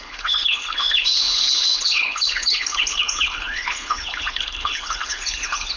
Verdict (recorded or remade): remade